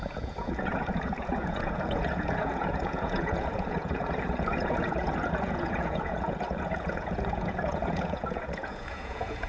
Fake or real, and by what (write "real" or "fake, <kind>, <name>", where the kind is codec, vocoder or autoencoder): fake, vocoder, Vocos